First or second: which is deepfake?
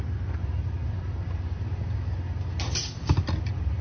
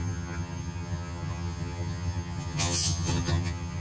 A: second